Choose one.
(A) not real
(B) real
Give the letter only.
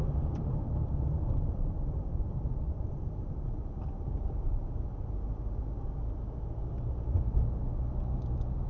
A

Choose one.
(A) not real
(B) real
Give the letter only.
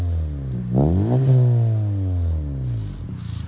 B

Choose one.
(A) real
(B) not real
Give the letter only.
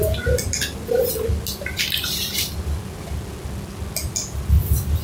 A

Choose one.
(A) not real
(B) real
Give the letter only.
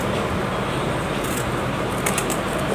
B